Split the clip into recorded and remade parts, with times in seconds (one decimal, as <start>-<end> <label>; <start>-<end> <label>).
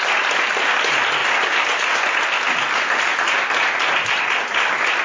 0.0-5.0 recorded